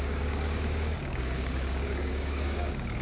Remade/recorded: remade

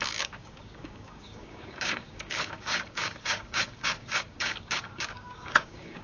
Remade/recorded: remade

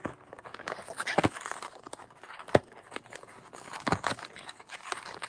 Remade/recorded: remade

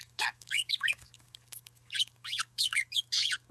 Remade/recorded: remade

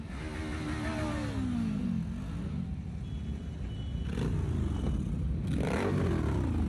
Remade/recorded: recorded